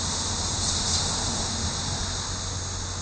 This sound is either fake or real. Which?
real